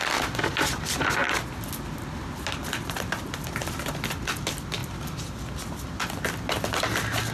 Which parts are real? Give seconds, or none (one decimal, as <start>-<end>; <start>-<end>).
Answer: 0.0-7.3